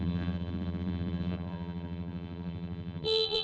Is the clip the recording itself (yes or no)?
no